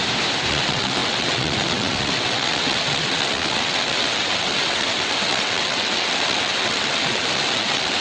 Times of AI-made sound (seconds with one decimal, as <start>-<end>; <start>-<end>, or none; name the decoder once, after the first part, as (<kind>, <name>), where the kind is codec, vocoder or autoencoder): 0.5-8.0 (vocoder, WaveNeXt)